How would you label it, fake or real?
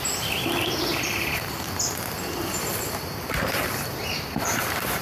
real